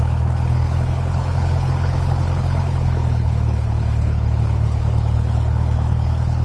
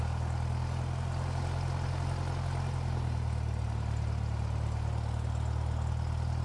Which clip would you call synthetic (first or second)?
first